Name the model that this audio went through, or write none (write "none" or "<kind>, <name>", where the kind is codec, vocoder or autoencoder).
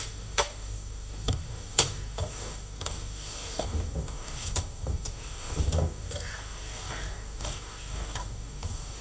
codec, DAC